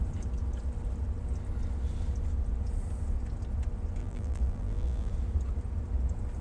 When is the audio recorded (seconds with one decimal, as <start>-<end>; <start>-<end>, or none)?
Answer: 0.0-4.0; 5.1-6.4